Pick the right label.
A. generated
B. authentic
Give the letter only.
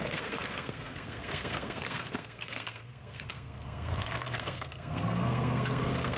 A